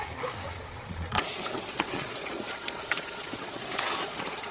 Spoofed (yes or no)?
yes